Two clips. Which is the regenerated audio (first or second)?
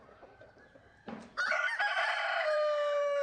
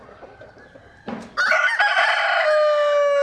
first